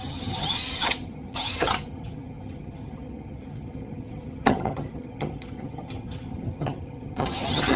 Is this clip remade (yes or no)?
yes